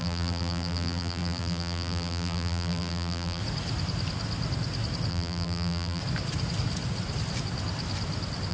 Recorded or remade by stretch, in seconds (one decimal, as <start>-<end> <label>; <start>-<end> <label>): 0.0-3.4 remade; 3.4-5.1 recorded; 5.1-6.0 remade; 6.0-8.5 recorded